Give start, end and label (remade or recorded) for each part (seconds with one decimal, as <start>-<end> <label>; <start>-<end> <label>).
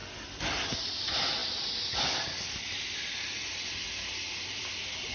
0.0-5.1 remade